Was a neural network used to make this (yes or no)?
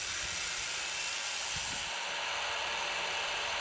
no